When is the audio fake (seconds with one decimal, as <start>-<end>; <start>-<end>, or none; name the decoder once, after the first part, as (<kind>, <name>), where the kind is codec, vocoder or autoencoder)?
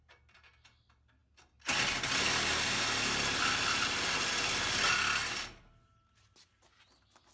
none